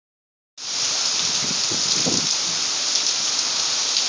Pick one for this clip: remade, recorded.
recorded